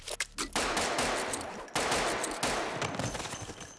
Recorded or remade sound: recorded